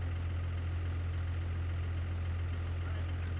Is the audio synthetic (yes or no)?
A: no